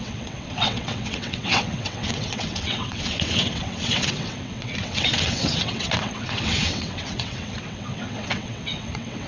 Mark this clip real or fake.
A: fake